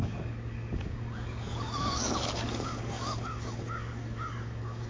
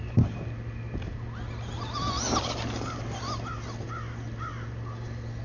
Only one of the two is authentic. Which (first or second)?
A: second